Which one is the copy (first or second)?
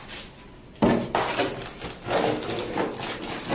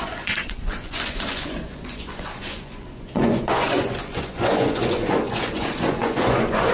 second